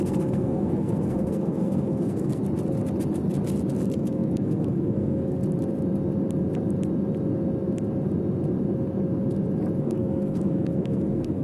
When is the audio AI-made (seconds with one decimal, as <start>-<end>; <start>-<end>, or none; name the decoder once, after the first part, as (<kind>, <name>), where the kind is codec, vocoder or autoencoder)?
0.0-2.4 (codec, SNAC); 3.8-5.4; 9.8-11.4